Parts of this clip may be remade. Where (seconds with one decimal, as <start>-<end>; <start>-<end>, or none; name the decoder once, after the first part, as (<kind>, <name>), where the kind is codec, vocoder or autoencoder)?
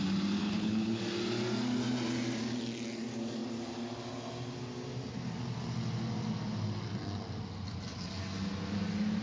0.4-1.0 (codec, HILCodec)